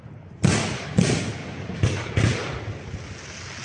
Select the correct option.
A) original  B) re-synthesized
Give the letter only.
A